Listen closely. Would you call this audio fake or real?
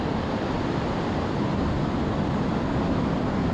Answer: real